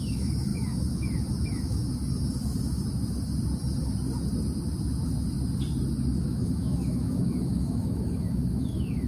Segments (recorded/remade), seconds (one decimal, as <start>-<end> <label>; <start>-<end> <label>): 0.0-1.8 remade; 1.8-6.2 recorded; 6.2-9.1 remade